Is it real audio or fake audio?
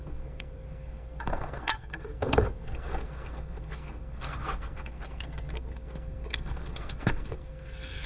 fake